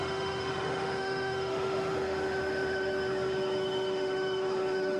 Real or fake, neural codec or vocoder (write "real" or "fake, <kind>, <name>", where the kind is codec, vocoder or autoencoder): fake, autoencoder, DAC-VAE